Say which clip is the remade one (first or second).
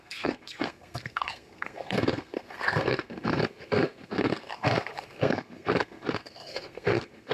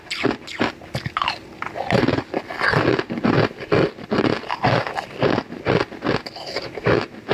first